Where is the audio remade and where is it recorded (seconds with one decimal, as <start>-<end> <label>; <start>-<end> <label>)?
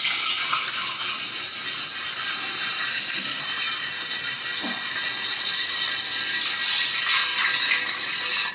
0.0-2.9 recorded; 2.9-3.4 remade; 3.4-8.5 recorded